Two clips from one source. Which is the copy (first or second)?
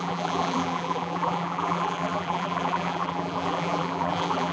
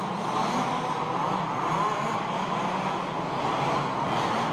first